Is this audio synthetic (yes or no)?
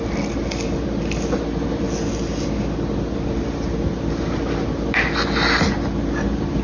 no